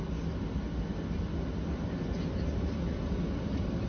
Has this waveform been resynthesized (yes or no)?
no